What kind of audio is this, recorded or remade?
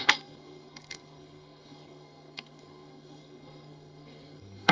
remade